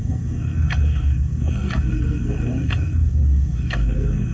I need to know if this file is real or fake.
fake